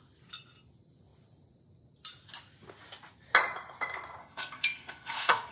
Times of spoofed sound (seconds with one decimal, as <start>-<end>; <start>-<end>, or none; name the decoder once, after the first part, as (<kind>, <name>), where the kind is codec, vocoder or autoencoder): 4.2-5.5 (codec, SNAC)